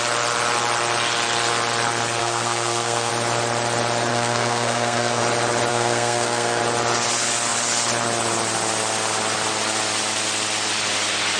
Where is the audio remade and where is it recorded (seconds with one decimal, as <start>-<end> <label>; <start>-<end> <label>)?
0.0-2.2 recorded; 2.2-3.1 remade; 3.1-4.1 recorded; 4.1-5.2 remade; 5.2-5.7 recorded; 5.7-6.6 remade; 6.6-11.4 recorded